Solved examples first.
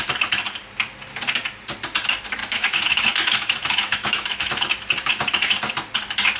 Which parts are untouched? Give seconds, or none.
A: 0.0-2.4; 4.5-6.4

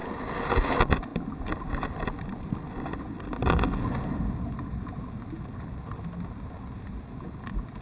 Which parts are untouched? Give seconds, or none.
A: 0.0-7.8